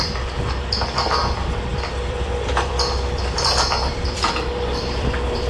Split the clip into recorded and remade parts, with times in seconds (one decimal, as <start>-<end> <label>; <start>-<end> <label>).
0.0-5.5 remade

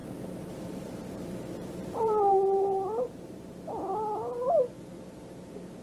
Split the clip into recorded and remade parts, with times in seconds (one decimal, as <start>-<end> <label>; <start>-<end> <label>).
0.0-3.5 remade; 3.5-5.8 recorded